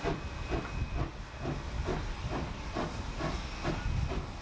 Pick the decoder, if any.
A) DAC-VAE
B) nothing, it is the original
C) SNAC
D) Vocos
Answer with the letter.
B